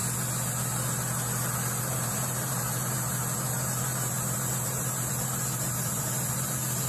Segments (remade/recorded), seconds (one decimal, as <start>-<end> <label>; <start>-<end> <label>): 0.0-1.8 recorded; 1.8-6.9 remade